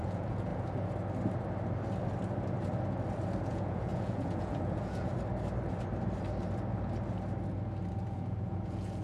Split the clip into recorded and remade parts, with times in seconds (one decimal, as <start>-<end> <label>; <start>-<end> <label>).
0.0-0.5 remade; 0.5-3.4 recorded; 3.4-5.1 remade; 5.1-7.9 recorded; 7.9-9.0 remade